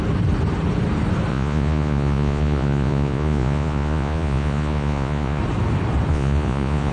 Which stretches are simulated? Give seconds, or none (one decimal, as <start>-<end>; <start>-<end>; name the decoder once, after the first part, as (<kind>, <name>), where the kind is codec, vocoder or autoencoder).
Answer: 1.3-5.4 (vocoder, Vocos); 6.1-6.9